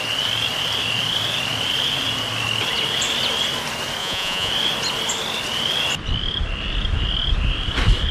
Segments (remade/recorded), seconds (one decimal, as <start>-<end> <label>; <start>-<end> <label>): 0.0-4.0 recorded; 4.0-4.5 remade; 4.5-8.1 recorded